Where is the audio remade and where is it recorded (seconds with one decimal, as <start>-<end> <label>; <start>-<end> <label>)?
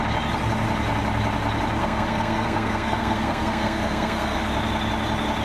0.0-1.8 recorded; 1.8-4.4 remade; 4.4-5.4 recorded